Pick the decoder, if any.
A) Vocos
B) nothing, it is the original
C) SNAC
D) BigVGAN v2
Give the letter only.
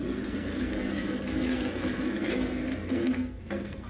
C